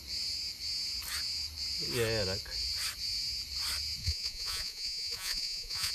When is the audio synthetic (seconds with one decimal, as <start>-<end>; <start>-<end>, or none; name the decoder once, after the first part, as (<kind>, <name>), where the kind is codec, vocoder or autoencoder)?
4.0-5.9 (vocoder, Vocos)